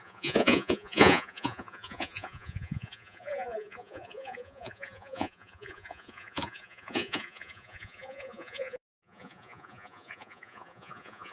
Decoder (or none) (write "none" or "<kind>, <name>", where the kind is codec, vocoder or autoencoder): vocoder, Vocos